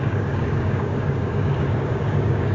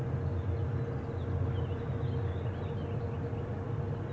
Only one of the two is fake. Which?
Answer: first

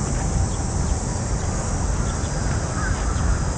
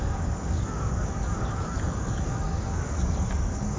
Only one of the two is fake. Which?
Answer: second